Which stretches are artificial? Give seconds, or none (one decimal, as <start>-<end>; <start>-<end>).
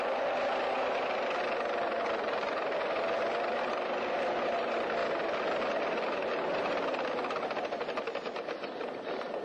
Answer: none